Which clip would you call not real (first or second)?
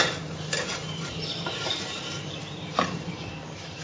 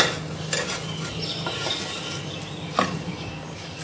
first